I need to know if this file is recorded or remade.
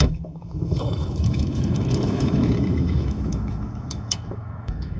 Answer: remade